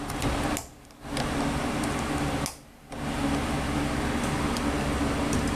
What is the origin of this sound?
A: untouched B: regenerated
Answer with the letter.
A